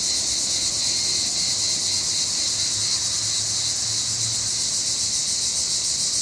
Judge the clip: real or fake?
real